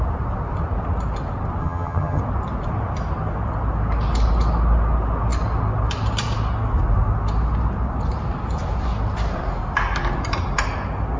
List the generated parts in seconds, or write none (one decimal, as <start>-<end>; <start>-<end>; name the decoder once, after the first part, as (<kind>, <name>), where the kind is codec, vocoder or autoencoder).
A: 1.6-2.2 (vocoder, HiFi-GAN)